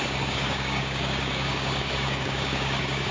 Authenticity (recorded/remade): remade